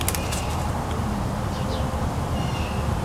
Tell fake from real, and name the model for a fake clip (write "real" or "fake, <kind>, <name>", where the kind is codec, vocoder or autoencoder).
real